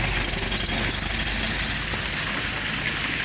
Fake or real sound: real